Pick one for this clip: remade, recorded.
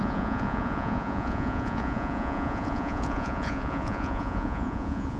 remade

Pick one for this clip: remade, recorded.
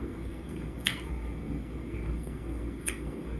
remade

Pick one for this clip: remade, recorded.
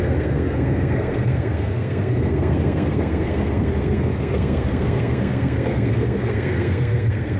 remade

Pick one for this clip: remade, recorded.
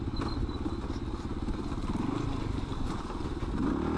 recorded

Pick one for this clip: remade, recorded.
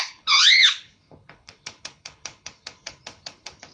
remade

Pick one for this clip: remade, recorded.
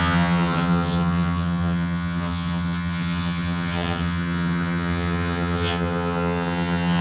remade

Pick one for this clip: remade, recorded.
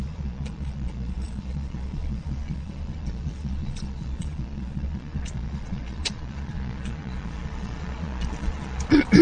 remade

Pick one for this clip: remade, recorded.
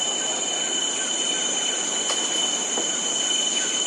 recorded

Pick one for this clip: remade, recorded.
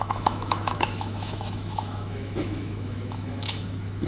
remade